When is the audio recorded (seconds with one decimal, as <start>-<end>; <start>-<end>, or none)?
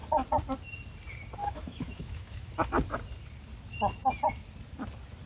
0.0-1.4; 2.5-5.3